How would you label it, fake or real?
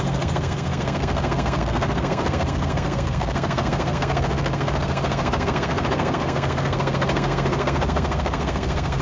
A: fake